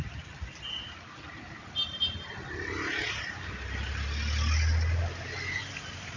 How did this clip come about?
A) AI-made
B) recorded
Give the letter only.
B